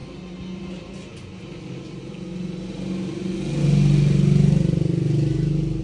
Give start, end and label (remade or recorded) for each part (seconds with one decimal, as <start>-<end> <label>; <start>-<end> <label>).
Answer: 0.0-5.8 recorded